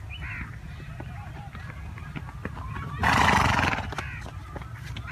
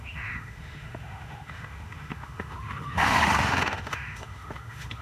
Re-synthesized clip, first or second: second